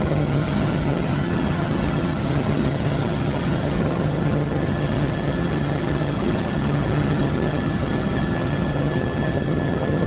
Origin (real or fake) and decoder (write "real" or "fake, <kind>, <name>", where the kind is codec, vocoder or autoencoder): fake, vocoder, HiFi-GAN